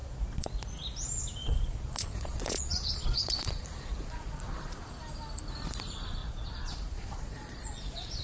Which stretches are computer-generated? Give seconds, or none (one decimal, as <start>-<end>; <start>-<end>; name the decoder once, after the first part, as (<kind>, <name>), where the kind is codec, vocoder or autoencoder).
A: 0.0-0.7 (vocoder, Vocos); 1.4-4.9; 6.2-8.2